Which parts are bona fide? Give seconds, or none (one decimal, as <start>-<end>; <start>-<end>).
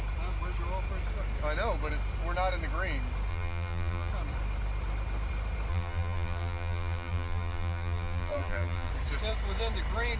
0.0-3.3; 4.1-5.7; 8.9-10.2